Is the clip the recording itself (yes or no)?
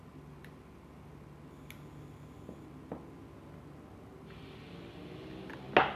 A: yes